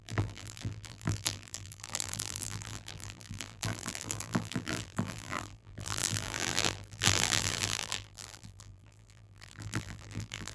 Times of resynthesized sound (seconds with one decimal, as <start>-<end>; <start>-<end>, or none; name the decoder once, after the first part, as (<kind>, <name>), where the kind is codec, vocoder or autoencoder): 0.0-10.5 (vocoder, BigVGAN v2)